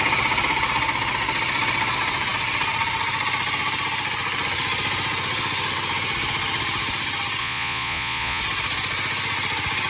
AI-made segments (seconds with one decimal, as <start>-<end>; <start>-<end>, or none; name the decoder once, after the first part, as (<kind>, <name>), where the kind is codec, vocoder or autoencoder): 7.4-8.4 (vocoder, Vocos)